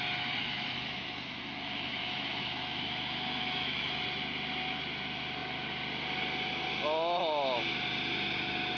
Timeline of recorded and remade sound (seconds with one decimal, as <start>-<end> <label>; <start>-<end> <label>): 0.0-0.4 recorded; 0.4-4.0 remade; 4.0-8.8 recorded